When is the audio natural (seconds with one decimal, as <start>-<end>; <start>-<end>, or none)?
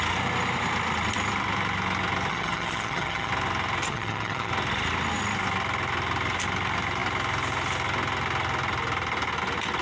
0.0-2.3; 3.3-3.9; 4.5-9.8